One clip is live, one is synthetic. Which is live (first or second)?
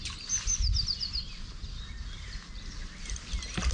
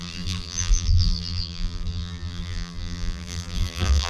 first